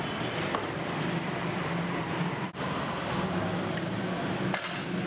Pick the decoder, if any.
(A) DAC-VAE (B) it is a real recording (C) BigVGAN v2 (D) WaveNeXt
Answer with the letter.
C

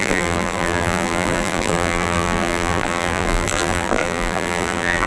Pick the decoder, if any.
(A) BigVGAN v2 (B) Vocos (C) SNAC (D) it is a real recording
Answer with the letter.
A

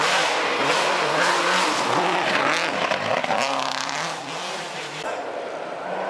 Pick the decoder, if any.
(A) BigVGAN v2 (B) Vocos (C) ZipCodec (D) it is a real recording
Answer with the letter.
D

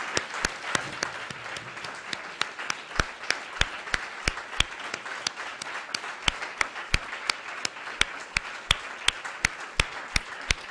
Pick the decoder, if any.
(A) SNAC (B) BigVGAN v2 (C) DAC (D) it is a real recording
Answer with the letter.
D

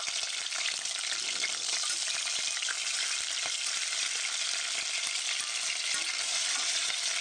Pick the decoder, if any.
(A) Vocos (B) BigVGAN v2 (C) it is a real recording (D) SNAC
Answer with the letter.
C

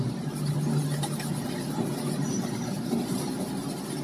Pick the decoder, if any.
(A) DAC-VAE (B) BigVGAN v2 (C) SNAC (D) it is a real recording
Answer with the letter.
D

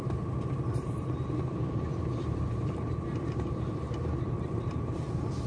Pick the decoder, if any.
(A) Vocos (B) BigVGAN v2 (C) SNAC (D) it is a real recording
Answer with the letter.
B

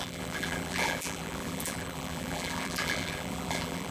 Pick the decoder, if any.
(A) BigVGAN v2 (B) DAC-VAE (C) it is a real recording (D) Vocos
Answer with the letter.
A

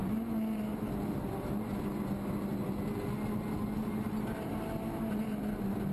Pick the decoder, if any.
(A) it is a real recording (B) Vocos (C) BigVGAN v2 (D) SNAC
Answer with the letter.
A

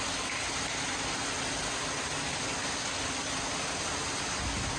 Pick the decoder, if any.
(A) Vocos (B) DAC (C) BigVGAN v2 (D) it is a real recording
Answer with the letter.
D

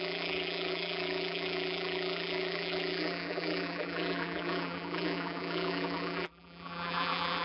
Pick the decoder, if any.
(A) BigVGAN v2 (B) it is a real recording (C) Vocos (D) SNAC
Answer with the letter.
A